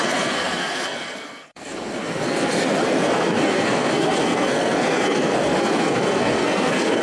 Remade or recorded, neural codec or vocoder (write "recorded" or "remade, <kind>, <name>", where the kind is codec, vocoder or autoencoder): remade, codec, SNAC